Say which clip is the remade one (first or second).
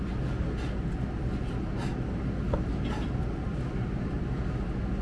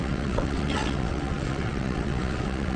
second